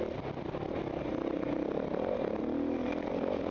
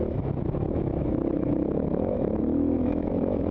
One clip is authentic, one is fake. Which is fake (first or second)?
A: second